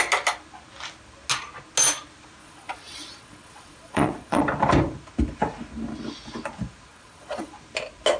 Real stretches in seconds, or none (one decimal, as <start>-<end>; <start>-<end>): 0.0-2.4; 4.4-6.9; 7.5-8.2